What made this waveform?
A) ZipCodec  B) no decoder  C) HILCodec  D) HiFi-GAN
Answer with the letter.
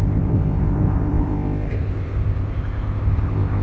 A